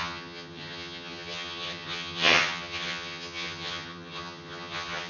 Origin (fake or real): fake